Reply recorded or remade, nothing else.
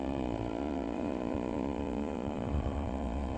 remade